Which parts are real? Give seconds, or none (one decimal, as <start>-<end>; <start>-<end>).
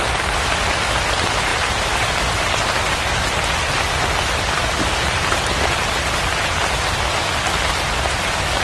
0.0-8.6